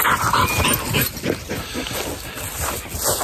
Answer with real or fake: real